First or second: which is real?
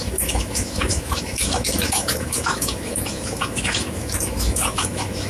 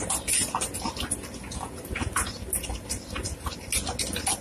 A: second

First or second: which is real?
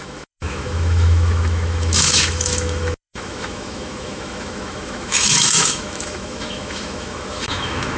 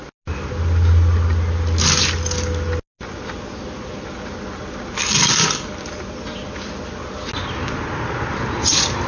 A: second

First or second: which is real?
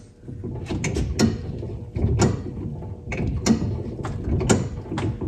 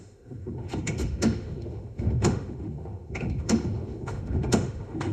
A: first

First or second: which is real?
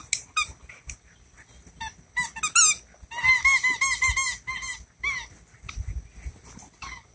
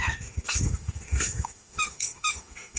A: first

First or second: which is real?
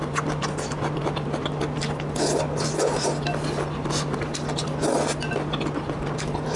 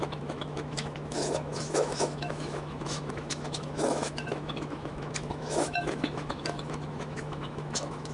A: first